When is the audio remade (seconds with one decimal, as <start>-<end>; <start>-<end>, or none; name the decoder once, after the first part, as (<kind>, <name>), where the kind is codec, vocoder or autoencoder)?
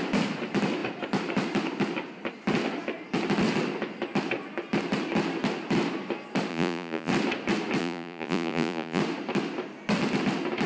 6.5-7.1 (vocoder, Vocos); 7.8-9.0